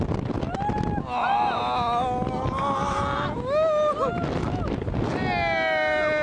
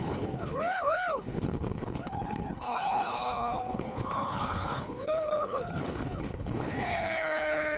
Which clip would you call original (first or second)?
first